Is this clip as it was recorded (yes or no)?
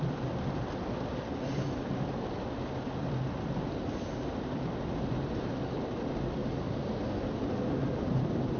yes